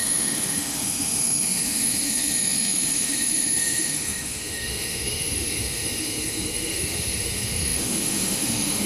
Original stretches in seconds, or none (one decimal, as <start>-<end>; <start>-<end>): none